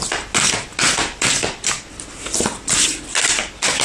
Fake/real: real